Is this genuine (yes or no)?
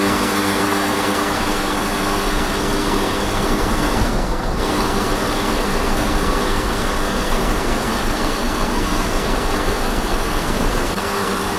no